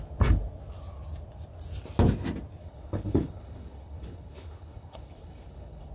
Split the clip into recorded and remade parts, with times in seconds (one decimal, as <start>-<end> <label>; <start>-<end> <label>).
0.0-2.6 recorded; 2.6-5.9 remade